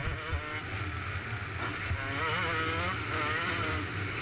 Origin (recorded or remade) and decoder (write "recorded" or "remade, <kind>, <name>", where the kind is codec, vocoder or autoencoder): recorded